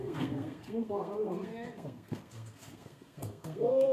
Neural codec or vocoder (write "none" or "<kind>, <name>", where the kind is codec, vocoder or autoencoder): codec, SNAC